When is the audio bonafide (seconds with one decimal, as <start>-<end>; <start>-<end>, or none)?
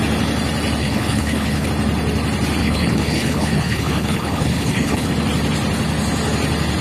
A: 0.0-0.8; 1.7-2.6; 5.1-6.8